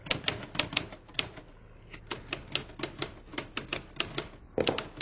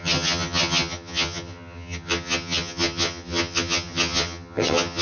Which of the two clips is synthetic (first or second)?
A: second